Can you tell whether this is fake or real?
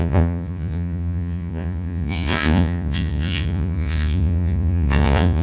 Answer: fake